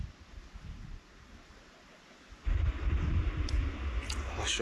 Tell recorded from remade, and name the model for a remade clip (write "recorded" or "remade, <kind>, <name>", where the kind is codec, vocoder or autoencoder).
recorded